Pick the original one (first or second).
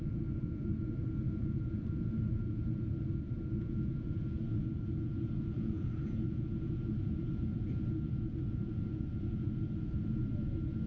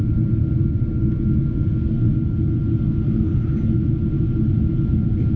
second